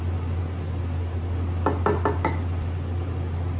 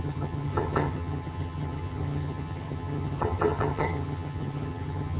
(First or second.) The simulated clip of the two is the second